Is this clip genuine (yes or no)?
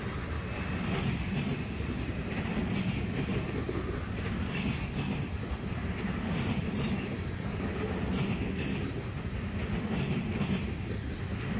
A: yes